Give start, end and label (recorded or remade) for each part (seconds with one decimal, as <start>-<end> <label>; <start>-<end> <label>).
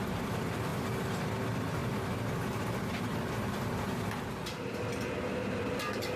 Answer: 0.0-0.7 remade; 0.7-1.2 recorded; 1.2-1.8 remade; 1.8-5.5 recorded; 5.5-6.2 remade